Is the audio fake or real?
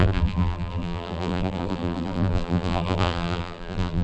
fake